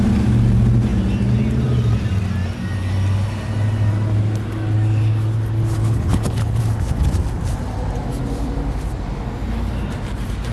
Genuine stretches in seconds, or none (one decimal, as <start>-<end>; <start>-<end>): 0.0-5.8; 6.6-10.5